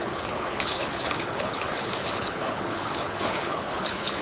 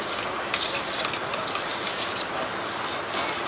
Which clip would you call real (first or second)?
second